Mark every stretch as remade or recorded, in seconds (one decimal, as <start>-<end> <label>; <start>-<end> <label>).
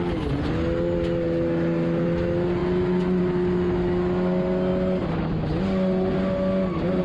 0.0-7.0 recorded